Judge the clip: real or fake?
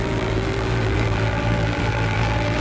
fake